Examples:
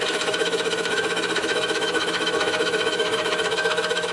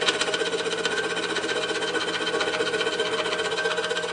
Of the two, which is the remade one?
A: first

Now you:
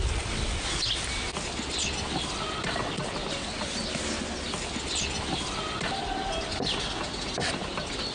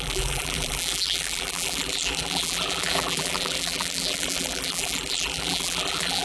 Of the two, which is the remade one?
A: second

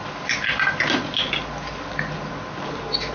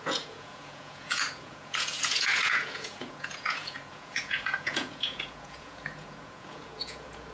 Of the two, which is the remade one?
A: second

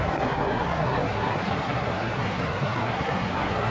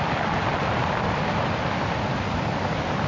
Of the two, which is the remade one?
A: first